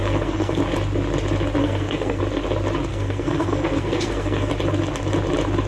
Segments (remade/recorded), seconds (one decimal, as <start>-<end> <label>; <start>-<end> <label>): 0.0-0.6 remade; 0.6-1.6 recorded; 1.6-2.2 remade; 2.2-2.9 recorded; 2.9-4.5 remade; 4.5-5.7 recorded